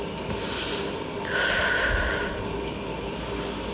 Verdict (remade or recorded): recorded